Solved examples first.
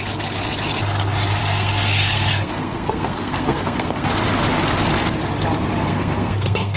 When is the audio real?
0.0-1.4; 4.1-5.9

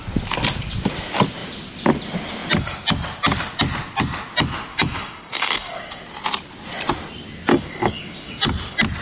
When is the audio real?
0.0-4.7; 6.0-7.5; 8.3-9.0

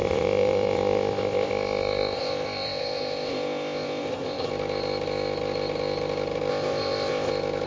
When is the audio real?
4.5-6.5; 7.3-7.7

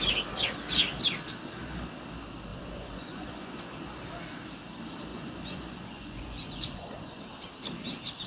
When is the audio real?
0.0-2.5; 3.6-5.1; 7.2-8.3

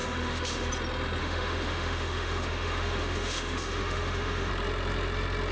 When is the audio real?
0.7-1.2; 4.5-5.5

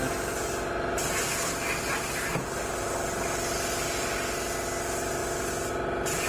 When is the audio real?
0.0-6.3

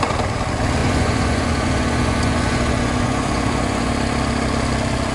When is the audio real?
0.0-0.8; 3.9-5.1